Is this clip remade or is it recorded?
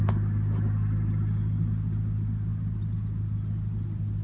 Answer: recorded